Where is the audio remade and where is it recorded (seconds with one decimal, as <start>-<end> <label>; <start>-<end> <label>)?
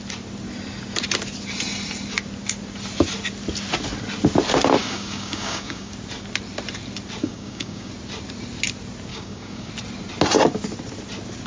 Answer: 0.0-4.8 recorded; 4.8-5.9 remade; 5.9-7.2 recorded; 7.2-7.9 remade; 7.9-9.1 recorded; 9.1-9.7 remade; 9.7-11.5 recorded